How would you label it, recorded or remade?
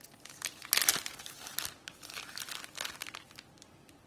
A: recorded